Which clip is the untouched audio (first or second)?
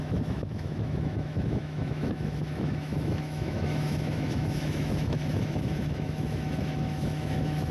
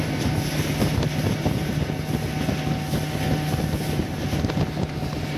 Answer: second